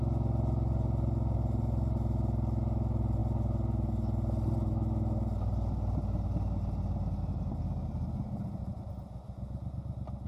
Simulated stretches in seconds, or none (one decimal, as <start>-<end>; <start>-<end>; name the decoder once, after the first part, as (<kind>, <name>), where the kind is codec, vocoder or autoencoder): none